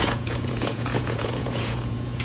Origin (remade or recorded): remade